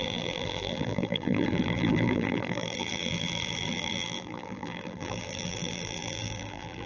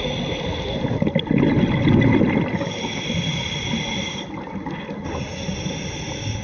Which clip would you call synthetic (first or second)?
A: first